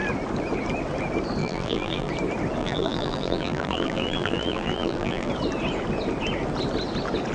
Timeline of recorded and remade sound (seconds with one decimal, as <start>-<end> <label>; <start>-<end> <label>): 0.0-1.4 recorded; 1.4-2.1 remade; 2.1-2.6 recorded; 2.6-5.3 remade; 5.3-7.3 recorded